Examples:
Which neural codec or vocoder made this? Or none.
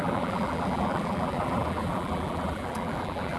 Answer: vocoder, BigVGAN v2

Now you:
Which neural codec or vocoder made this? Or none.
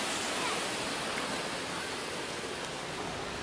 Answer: none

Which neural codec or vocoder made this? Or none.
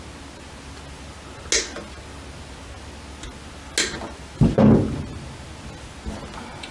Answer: none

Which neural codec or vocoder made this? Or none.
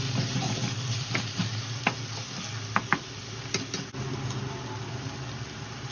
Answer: none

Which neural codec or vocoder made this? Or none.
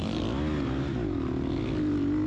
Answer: none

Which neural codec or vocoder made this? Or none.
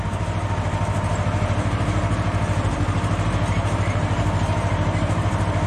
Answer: vocoder, BigVGAN v2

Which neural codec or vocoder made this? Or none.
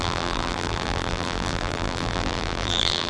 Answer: vocoder, BigVGAN v2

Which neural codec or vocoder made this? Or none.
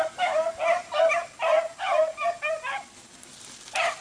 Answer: none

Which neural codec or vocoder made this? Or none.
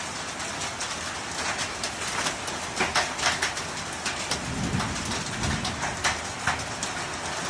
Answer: none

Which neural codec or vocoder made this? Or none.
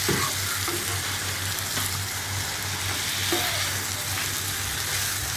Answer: none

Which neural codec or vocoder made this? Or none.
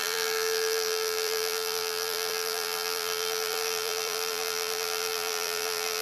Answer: vocoder, BigVGAN v2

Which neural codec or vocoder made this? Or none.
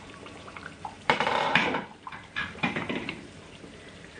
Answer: vocoder, BigVGAN v2